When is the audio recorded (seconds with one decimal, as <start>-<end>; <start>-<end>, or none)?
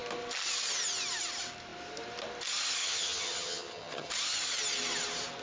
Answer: 0.0-2.8; 4.1-5.4